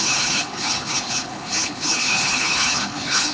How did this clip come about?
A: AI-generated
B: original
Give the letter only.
A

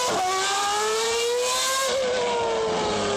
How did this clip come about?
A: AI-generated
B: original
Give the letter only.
B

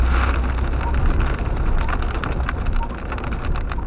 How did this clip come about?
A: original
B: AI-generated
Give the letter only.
A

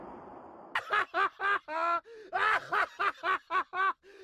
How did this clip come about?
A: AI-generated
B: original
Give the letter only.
B